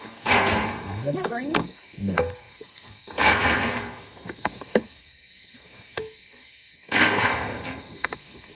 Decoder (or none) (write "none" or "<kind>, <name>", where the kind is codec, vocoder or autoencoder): codec, SNAC